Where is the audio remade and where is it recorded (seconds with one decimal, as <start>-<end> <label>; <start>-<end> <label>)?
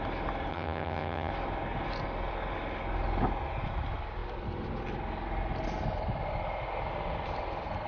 0.0-0.5 recorded; 0.5-1.3 remade; 1.3-7.9 recorded